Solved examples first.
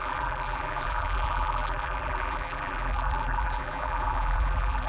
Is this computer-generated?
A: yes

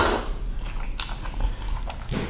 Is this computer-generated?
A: no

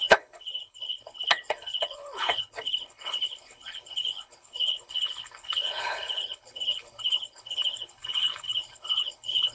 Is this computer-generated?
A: yes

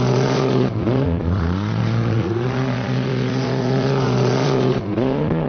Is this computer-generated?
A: yes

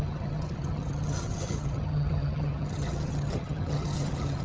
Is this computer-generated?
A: yes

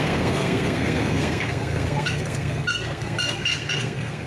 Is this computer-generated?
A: yes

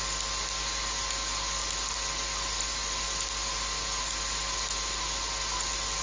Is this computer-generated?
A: no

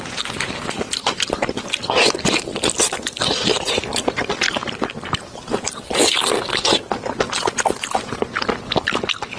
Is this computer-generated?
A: no